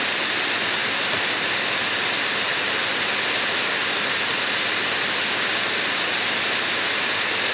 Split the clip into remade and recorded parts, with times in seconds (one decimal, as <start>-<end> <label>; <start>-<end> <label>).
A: 0.0-7.5 recorded